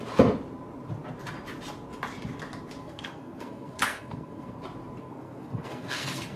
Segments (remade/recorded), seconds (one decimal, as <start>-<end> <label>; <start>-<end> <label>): 0.0-2.8 recorded; 2.8-4.6 remade; 4.6-5.0 recorded; 5.0-6.4 remade

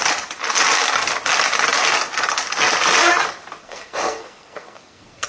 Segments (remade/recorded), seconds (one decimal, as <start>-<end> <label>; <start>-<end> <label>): 0.0-3.6 recorded; 3.6-5.3 remade

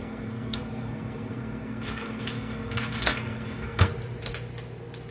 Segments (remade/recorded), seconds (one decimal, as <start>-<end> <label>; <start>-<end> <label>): 0.0-3.9 remade; 3.9-5.1 recorded

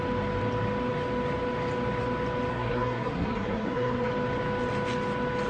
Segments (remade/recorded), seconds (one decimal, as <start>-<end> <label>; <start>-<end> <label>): 0.0-2.5 recorded; 2.5-4.1 remade; 4.1-5.5 recorded

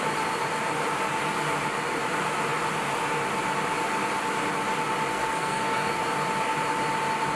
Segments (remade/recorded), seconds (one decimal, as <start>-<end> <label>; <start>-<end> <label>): 0.0-5.1 recorded; 5.1-6.0 remade; 6.0-7.4 recorded

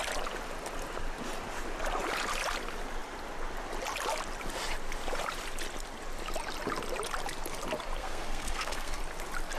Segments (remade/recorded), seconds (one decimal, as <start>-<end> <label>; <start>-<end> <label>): 0.0-8.0 recorded; 8.0-9.0 remade; 9.0-9.6 recorded

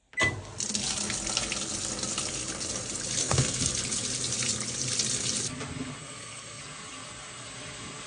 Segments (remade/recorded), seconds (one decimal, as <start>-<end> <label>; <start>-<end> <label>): 0.0-3.2 recorded; 3.2-3.7 remade; 3.7-6.0 recorded; 6.0-6.6 remade; 6.6-8.1 recorded